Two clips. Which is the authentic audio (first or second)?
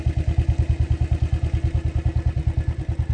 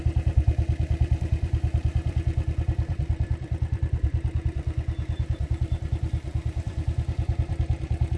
first